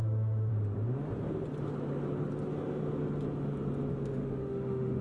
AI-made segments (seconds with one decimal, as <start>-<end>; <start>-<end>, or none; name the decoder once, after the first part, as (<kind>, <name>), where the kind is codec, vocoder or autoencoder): 0.0-0.5 (autoencoder, DAC-VAE); 4.0-5.0